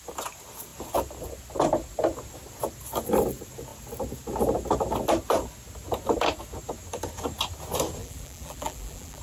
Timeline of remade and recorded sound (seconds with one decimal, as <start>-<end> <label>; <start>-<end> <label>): 0.0-8.0 recorded; 8.0-9.2 remade